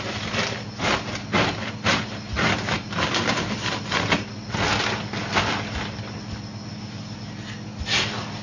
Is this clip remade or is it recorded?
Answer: recorded